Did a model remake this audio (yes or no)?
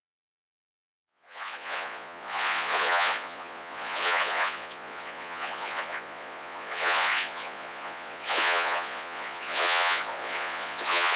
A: yes